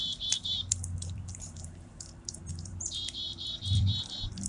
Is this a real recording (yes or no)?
no